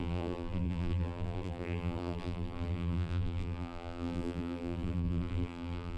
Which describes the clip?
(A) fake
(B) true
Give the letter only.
A